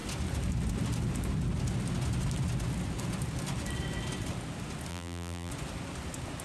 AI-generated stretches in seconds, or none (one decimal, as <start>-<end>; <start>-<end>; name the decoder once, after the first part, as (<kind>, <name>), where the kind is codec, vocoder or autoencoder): 4.9-5.5 (vocoder, BigVGAN v2)